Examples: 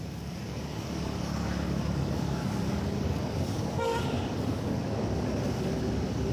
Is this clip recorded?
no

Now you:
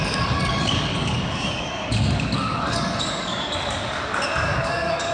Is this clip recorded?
no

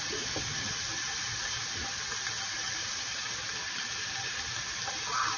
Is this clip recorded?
yes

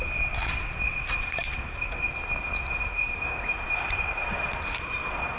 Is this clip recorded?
yes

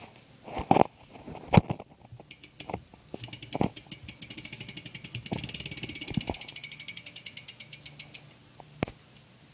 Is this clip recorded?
yes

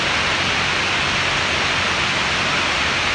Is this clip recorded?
yes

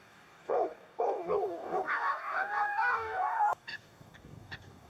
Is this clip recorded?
no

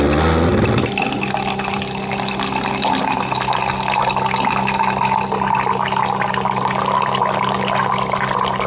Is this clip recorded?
yes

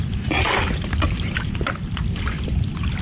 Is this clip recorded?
yes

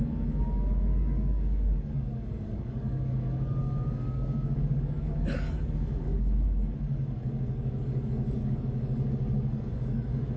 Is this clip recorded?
no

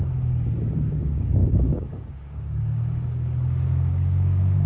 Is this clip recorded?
no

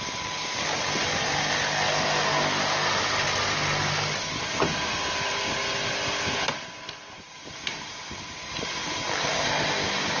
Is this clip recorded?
yes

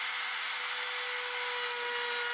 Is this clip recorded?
yes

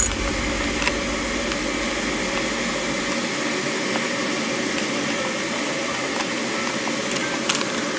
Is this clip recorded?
yes